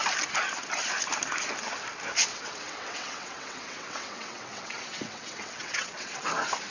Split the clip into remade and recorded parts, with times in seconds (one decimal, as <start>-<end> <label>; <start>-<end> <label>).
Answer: 0.0-2.3 recorded; 2.3-6.3 remade; 6.3-6.7 recorded